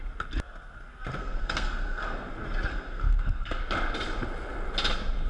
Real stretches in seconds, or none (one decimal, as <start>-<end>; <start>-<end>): 0.0-1.2; 2.3-2.7; 3.6-5.3